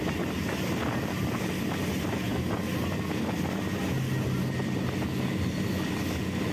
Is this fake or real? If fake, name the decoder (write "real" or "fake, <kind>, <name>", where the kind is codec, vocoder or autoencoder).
real